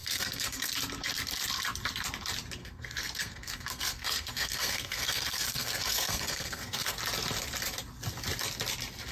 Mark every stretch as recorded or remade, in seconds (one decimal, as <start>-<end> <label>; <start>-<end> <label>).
0.0-0.7 remade; 0.7-2.6 recorded; 2.6-7.0 remade; 7.0-9.1 recorded